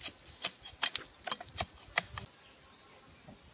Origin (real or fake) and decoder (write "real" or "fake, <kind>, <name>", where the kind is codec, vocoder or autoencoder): real